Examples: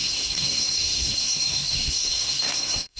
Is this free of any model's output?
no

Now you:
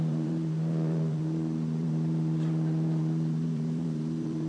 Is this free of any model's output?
no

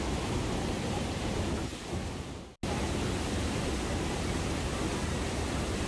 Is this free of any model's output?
yes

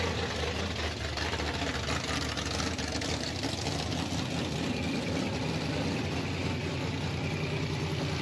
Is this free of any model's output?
yes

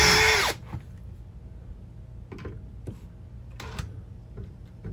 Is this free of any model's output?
yes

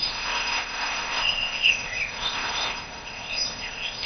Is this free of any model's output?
no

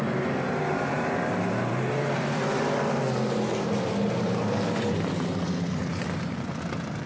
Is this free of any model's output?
no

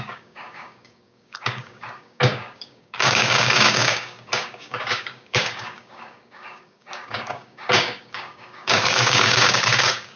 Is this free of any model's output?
no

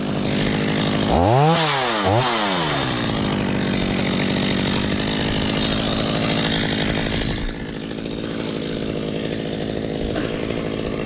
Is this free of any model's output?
yes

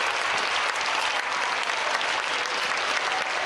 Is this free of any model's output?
yes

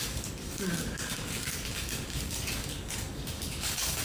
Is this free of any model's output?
no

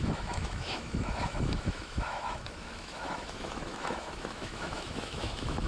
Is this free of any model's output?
no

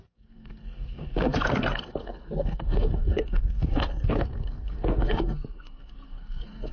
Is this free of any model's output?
no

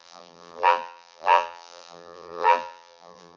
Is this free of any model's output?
no